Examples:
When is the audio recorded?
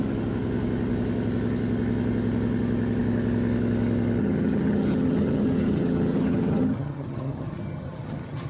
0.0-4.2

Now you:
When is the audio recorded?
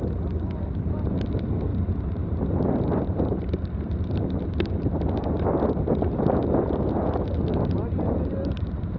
0.0-1.7; 4.4-9.0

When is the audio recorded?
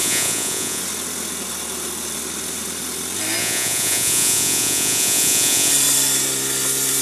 0.8-3.4; 5.7-7.0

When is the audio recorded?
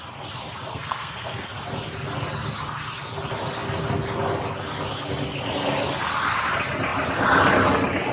0.0-0.7; 1.5-8.1